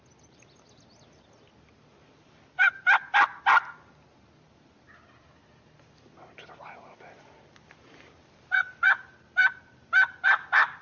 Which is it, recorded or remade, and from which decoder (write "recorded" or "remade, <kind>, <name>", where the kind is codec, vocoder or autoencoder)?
recorded